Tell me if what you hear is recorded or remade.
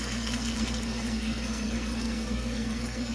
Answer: remade